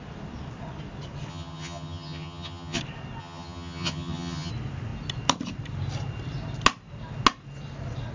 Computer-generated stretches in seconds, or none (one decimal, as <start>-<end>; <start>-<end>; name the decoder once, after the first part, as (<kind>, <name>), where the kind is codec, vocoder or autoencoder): 1.3-2.8 (vocoder, HiFi-GAN); 3.2-4.5